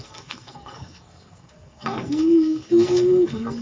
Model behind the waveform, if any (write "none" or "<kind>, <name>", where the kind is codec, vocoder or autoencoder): codec, SNAC